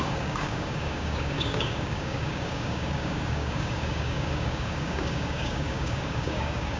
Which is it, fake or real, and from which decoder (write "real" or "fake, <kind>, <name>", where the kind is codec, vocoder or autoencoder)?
fake, codec, DAC